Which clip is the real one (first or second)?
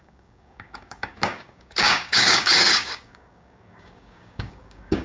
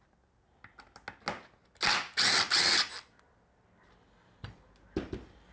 second